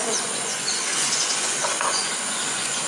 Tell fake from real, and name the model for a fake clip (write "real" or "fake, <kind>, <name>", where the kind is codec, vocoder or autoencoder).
fake, vocoder, Vocos